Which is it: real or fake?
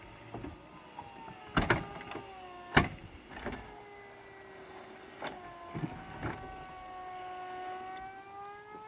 real